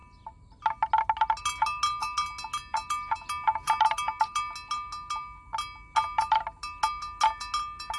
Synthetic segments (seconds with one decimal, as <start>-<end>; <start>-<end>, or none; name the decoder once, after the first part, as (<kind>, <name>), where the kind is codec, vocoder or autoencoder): none